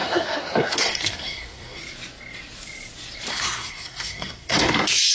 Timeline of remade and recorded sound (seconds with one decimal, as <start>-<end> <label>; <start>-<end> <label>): 0.0-1.8 remade; 1.8-3.3 recorded; 3.3-5.1 remade